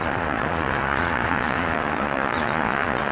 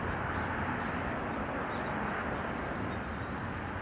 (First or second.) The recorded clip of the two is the second